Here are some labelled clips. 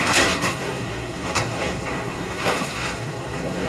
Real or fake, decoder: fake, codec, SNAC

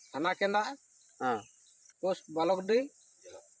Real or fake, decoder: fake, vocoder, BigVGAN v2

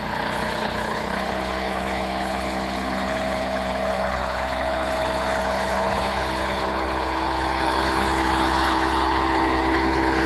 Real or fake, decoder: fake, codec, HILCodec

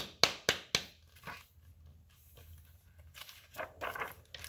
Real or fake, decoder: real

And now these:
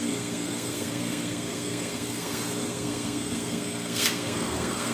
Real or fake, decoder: fake, codec, SNAC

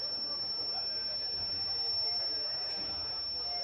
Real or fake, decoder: real